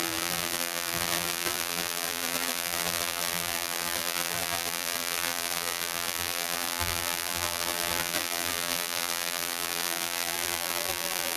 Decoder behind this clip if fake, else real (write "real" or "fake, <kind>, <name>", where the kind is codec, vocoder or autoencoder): fake, vocoder, BigVGAN v2